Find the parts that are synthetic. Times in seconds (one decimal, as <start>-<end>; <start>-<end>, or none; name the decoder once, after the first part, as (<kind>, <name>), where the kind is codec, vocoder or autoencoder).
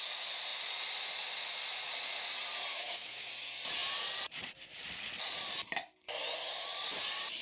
2.7-3.3 (autoencoder, DAC-VAE)